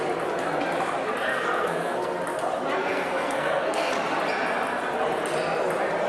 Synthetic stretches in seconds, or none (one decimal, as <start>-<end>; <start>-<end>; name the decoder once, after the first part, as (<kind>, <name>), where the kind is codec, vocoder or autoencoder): 1.3-2.2 (codec, SNAC); 2.8-3.9